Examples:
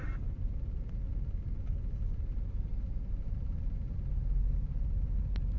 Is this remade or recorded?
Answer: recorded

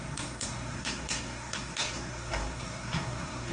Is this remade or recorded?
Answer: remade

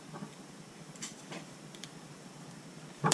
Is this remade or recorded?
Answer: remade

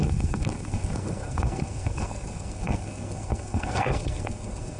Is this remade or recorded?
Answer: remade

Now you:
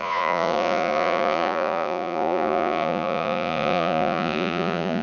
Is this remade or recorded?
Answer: remade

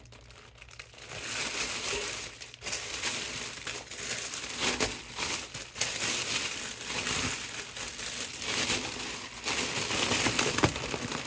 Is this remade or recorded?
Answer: recorded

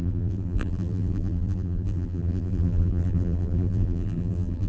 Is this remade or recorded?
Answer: remade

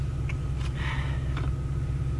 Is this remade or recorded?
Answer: recorded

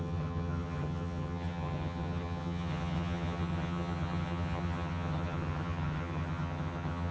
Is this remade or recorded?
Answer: remade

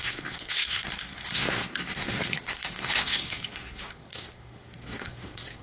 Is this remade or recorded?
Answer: remade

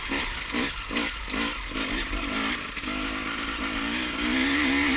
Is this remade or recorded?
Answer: recorded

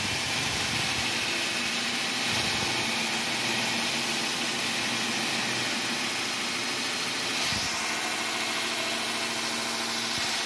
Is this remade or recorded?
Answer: recorded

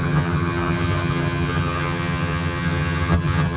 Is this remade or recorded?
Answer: remade